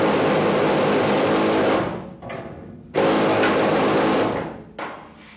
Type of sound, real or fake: real